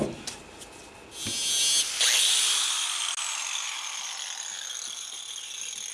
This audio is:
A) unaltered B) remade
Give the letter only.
A